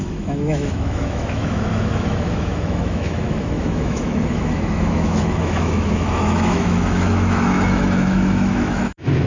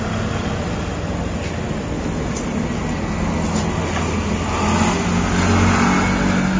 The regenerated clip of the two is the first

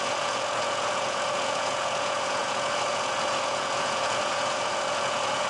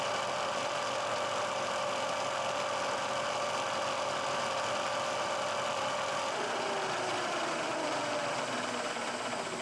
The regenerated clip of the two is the first